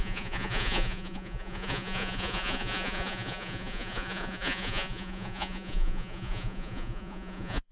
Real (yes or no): no